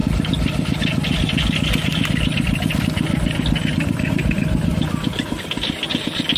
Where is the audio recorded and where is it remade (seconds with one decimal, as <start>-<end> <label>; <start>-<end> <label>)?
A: 0.0-6.4 recorded